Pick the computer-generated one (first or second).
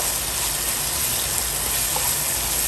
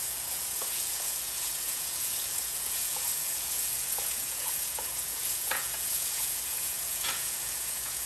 second